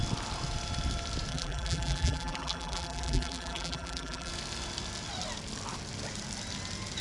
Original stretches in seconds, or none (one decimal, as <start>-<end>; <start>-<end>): 0.0-1.3; 4.3-7.0